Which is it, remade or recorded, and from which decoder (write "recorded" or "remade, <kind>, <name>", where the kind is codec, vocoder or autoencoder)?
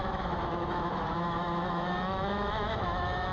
remade, autoencoder, DAC-VAE